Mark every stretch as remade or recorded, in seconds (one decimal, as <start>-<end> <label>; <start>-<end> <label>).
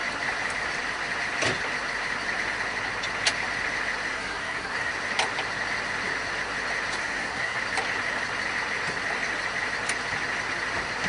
0.0-4.1 recorded; 4.1-4.9 remade; 4.9-7.0 recorded; 7.0-7.6 remade; 7.6-11.1 recorded